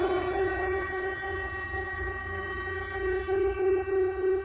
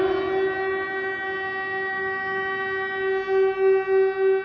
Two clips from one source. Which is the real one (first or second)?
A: second